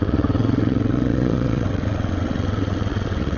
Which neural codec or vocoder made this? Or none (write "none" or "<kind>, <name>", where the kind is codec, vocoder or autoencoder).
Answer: vocoder, WaveNeXt